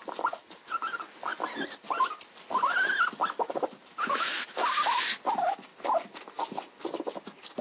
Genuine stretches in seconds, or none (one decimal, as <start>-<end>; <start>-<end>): 0.0-7.6